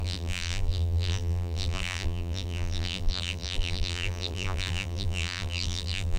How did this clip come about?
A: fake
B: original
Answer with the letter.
A